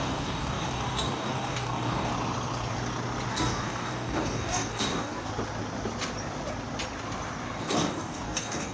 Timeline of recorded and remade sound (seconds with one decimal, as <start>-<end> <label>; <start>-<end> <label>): 0.0-2.1 remade; 2.1-3.3 recorded; 3.3-5.3 remade; 5.3-7.6 recorded; 7.6-8.7 remade